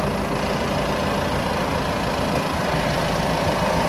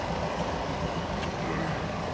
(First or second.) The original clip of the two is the first